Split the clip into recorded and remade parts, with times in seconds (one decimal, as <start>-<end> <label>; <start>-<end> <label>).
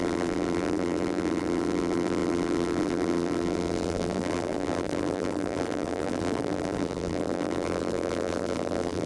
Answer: 0.0-9.1 remade